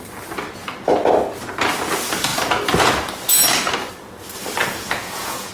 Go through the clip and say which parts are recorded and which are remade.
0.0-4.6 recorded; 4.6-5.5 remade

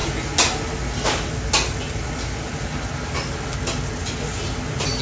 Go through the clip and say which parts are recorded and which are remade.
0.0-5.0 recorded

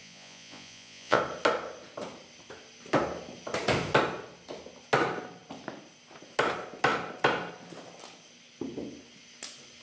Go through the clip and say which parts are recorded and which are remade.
0.0-1.2 remade; 1.2-9.8 recorded

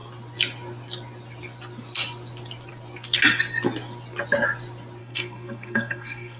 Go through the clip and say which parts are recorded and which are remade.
0.0-5.0 recorded; 5.0-6.4 remade

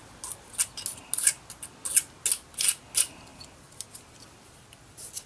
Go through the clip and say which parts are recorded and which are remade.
0.0-5.3 recorded